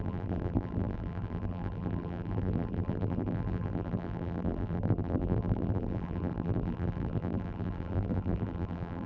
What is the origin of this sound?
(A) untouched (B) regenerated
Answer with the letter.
B